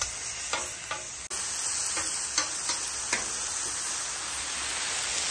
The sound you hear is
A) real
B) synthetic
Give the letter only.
A